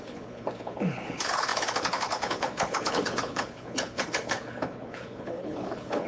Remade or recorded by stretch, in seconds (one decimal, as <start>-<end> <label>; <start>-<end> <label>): 0.0-6.1 remade